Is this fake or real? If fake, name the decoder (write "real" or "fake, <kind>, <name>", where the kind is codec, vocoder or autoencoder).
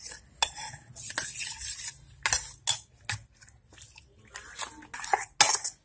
real